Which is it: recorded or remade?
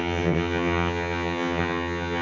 remade